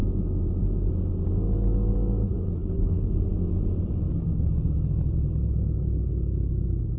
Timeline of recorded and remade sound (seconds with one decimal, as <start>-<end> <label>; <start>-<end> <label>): 0.0-2.2 recorded; 2.2-3.1 remade; 3.1-7.0 recorded